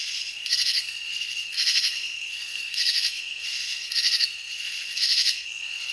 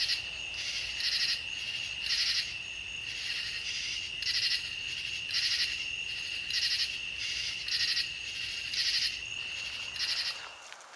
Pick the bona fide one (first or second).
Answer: second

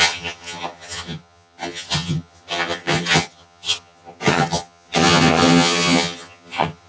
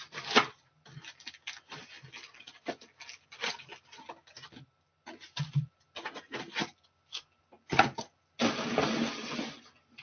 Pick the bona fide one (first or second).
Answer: second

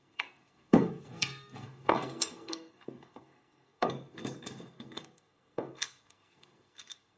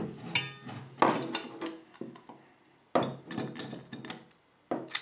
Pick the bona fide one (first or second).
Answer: second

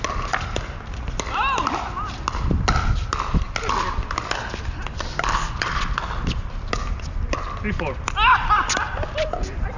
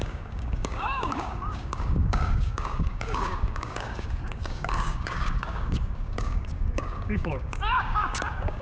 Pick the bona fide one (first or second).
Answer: first